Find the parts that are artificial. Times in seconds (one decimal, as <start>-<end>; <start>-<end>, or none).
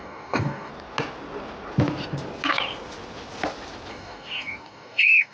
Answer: 0.0-0.7; 3.9-5.3